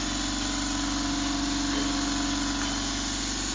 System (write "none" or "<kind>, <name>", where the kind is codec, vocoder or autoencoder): none